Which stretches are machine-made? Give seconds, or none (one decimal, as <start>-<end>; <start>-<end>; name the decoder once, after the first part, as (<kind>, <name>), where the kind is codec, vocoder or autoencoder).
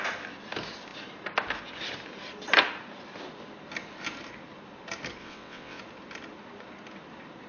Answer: 5.2-5.8 (vocoder, WaveNeXt)